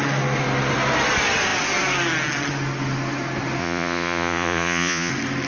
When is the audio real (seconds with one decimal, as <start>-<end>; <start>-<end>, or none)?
0.0-3.6; 5.1-5.5